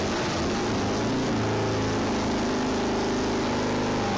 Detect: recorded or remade recorded